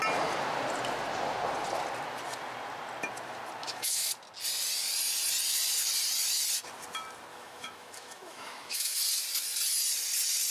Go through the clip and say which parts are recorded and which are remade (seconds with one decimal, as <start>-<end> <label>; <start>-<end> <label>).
0.0-3.6 recorded; 3.6-4.1 remade; 4.1-7.3 recorded; 7.3-9.0 remade; 9.0-10.5 recorded